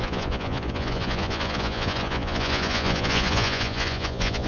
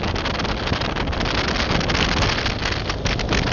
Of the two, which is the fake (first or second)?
first